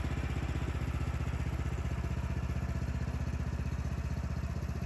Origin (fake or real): real